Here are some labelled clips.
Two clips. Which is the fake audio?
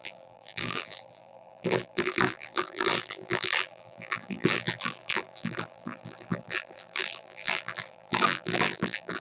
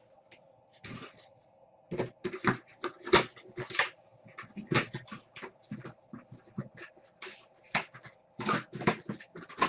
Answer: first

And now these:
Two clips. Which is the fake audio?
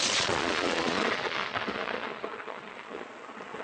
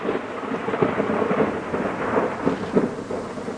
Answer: first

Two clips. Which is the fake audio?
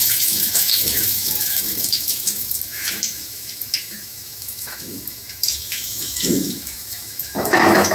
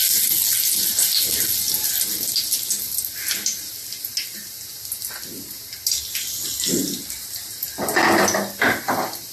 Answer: first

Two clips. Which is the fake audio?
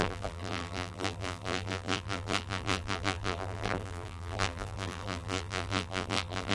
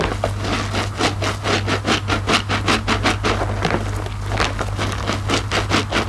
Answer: first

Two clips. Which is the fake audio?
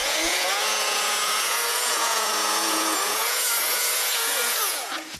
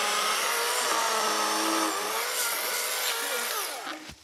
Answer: first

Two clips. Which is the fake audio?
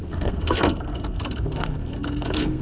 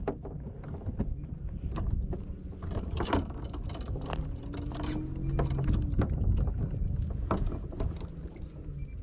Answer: first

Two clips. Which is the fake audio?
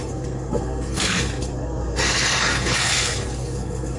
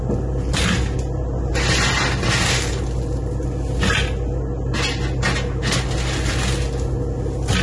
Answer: first